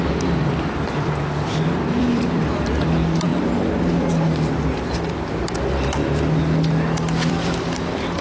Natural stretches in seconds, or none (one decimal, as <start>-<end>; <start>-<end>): 3.3-7.3